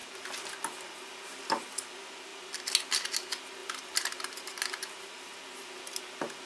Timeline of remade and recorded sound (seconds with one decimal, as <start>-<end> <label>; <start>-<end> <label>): 0.0-6.5 recorded